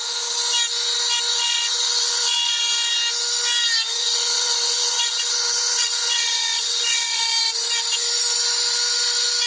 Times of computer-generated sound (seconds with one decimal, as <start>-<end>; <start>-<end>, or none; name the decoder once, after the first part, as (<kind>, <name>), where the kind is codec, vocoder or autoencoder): 1.3-2.5 (vocoder, WaveNeXt); 4.0-7.2